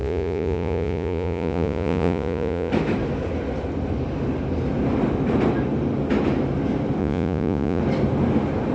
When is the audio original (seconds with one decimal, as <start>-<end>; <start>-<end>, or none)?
2.7-7.0; 7.8-8.7